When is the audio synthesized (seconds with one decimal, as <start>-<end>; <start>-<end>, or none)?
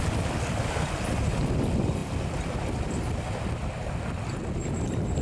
none